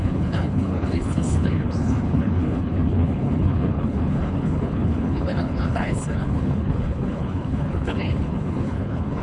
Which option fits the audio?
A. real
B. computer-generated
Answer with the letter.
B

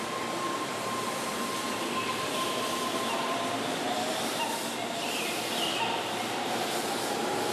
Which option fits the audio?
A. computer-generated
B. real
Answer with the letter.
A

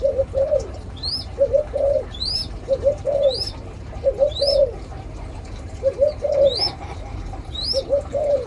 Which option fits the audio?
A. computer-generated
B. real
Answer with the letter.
A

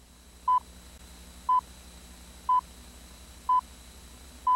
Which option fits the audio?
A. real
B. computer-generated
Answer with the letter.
A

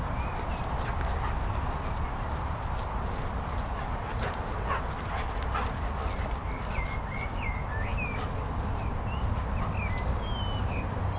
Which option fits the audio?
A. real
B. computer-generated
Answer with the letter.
A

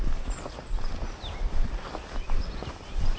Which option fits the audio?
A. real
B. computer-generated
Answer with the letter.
A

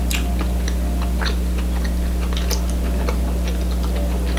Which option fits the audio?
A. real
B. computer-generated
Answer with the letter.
A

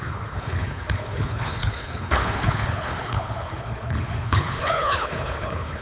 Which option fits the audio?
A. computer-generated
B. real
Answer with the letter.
A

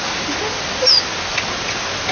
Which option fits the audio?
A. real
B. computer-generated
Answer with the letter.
A